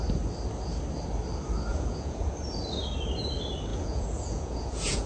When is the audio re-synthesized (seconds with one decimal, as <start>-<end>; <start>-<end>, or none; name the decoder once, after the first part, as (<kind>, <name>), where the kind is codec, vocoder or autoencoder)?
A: 1.7-2.3 (vocoder, Vocos); 3.7-5.1